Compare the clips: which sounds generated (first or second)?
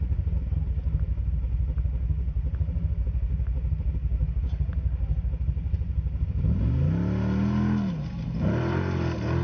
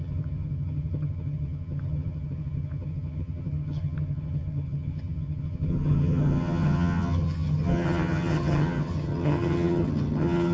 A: second